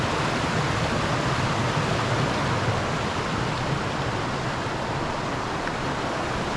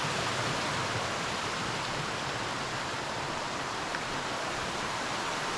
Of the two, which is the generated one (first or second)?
second